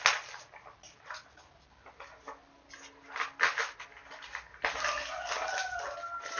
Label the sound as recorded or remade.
recorded